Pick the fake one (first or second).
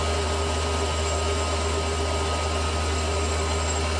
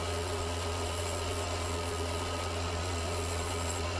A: second